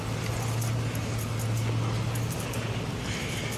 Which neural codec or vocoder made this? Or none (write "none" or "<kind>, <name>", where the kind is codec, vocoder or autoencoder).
none